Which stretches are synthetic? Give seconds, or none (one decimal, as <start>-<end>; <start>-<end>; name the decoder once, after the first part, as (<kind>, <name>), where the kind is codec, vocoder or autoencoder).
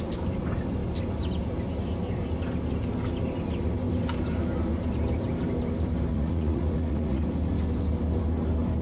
6.1-7.2 (vocoder, Vocos)